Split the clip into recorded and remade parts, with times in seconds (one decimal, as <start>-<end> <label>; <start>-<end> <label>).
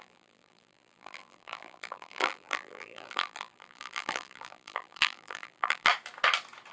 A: 0.0-5.9 remade; 5.9-6.7 recorded